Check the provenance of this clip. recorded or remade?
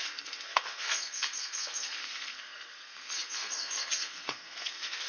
remade